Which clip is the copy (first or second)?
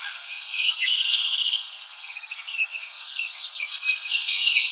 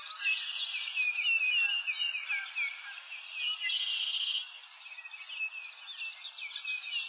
first